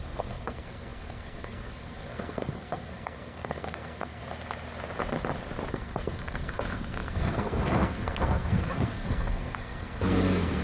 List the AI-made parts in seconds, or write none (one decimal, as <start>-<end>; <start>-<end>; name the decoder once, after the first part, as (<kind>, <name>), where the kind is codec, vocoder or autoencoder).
0.0-4.2 (codec, SNAC); 5.7-10.6